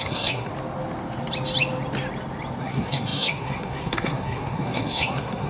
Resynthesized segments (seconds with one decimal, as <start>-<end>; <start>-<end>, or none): 0.0-0.5; 2.6-5.5